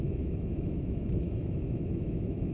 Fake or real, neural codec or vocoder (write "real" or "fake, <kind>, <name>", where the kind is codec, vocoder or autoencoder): fake, autoencoder, DAC-VAE